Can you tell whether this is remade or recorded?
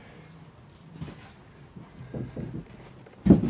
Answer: recorded